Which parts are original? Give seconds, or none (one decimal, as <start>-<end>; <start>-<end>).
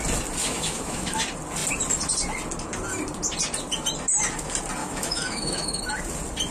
0.0-0.4; 1.2-4.8; 5.8-6.5